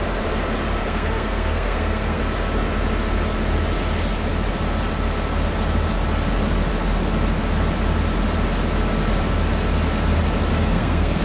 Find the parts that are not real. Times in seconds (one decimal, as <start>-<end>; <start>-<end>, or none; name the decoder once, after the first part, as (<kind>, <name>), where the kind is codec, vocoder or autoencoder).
0.8-2.2 (codec, SNAC); 10.5-11.2